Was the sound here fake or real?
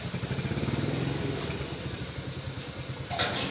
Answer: real